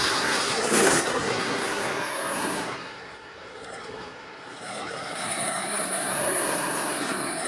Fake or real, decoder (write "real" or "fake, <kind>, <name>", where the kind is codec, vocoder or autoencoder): fake, codec, SNAC